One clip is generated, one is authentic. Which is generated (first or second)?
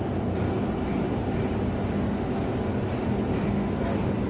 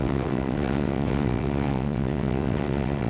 second